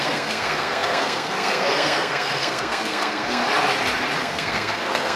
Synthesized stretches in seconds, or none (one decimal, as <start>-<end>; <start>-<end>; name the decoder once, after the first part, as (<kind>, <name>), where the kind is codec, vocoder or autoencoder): 0.0-3.4 (codec, SNAC); 4.2-5.2